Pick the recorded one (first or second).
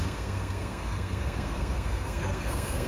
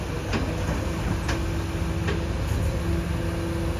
second